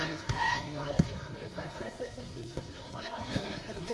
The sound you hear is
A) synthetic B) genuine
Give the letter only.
A